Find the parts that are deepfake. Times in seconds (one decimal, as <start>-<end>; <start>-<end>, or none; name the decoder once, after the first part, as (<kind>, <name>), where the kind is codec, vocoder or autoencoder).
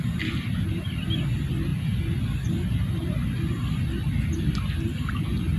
none